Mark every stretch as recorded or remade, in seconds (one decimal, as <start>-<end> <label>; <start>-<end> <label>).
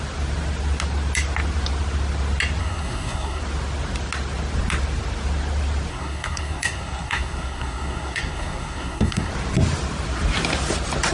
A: 0.0-2.6 recorded; 2.6-3.4 remade; 3.4-5.9 recorded; 5.9-9.3 remade; 9.3-11.1 recorded